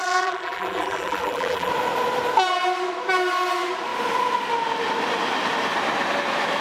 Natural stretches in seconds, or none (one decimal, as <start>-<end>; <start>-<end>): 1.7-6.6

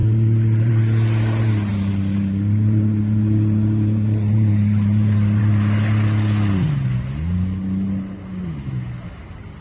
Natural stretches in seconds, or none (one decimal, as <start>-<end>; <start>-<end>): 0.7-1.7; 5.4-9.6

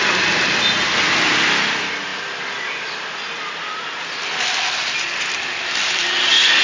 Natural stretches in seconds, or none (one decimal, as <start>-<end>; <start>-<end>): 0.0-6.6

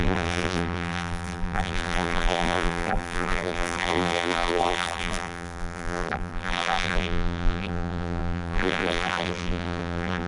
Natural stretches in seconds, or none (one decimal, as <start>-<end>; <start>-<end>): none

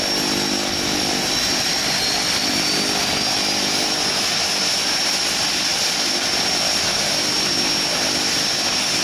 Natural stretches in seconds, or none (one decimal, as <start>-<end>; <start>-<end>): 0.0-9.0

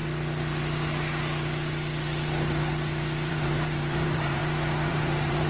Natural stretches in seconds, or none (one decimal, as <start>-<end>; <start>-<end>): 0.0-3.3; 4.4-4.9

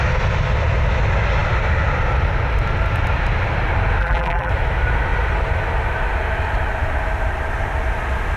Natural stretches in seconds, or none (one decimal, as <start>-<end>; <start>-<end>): 0.0-4.0; 4.5-8.4